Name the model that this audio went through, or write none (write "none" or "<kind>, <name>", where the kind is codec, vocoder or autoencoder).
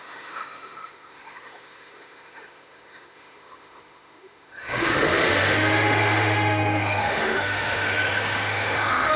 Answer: autoencoder, DAC-VAE